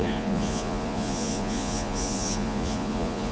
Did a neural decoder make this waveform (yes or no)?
yes